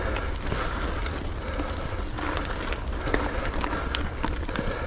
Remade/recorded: recorded